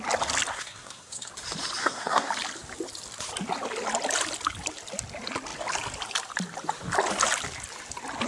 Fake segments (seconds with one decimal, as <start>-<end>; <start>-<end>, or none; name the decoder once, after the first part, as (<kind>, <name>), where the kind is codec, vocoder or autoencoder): 0.5-1.3 (codec, SNAC); 1.8-2.3